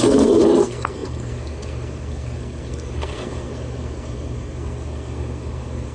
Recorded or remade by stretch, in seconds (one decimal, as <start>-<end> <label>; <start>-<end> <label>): 0.0-5.9 remade